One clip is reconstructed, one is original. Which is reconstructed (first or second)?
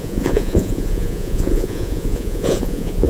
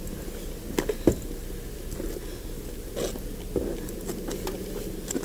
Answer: first